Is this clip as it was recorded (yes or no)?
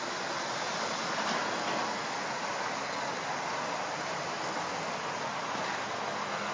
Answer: yes